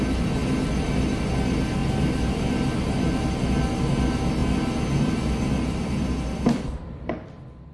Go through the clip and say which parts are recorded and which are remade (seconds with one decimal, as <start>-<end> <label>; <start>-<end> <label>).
0.0-7.7 recorded

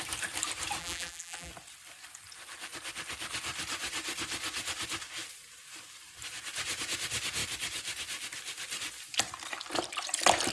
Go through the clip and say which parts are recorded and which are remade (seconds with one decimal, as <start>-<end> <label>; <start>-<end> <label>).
0.0-0.8 recorded; 0.8-1.5 remade; 1.5-10.5 recorded

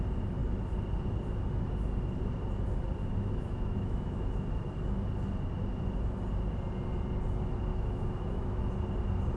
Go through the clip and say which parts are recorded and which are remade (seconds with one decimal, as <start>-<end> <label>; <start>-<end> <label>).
0.0-3.0 recorded; 3.0-4.5 remade; 4.5-7.7 recorded; 7.7-8.6 remade; 8.6-9.4 recorded

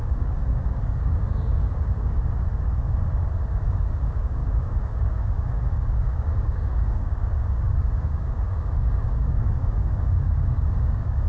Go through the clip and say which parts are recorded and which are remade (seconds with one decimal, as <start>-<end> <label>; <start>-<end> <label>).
0.0-2.2 remade; 2.2-3.5 recorded; 3.5-11.3 remade

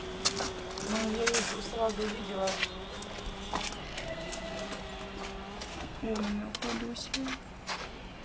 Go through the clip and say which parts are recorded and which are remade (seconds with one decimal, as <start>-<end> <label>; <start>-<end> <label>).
0.0-3.9 recorded; 3.9-4.6 remade; 4.6-5.7 recorded; 5.7-6.2 remade; 6.2-8.2 recorded

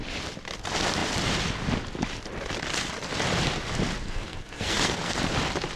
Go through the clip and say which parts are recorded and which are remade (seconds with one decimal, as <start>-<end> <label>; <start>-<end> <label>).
0.0-4.0 recorded; 4.0-5.2 remade; 5.2-5.8 recorded